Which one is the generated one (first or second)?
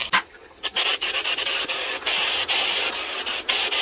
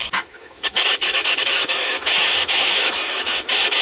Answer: second